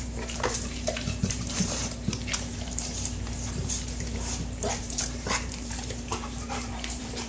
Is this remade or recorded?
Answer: remade